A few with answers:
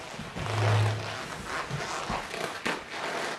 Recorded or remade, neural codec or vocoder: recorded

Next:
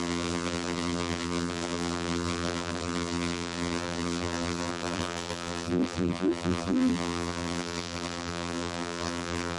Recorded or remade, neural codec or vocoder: remade, vocoder, BigVGAN v2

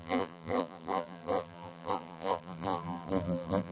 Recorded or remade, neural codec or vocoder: remade, vocoder, BigVGAN v2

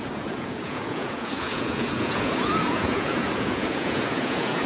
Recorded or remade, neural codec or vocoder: remade, vocoder, Vocos